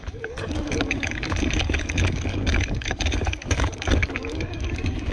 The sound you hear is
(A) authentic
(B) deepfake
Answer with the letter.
B